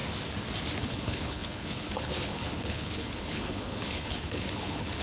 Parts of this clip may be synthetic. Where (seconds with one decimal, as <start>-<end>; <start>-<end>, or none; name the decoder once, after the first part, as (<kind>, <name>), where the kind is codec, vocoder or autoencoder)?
0.8-5.0 (codec, HILCodec)